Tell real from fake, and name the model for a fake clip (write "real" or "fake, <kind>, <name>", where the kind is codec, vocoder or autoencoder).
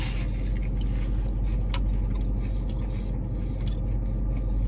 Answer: real